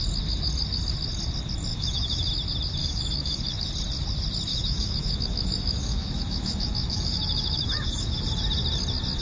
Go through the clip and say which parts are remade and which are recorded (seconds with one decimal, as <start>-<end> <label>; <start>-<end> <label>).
0.0-1.7 recorded; 1.7-2.3 remade; 2.3-2.8 recorded; 2.8-3.7 remade; 3.7-4.5 recorded; 4.5-8.2 remade; 8.2-9.2 recorded